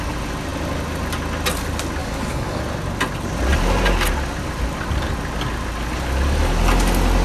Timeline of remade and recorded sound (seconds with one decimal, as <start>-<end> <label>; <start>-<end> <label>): 0.0-2.0 recorded; 2.0-2.6 remade; 2.6-7.2 recorded